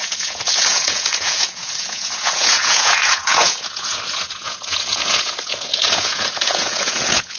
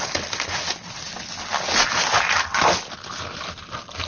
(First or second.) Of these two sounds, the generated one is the first